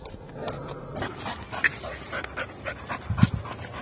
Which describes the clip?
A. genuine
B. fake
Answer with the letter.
A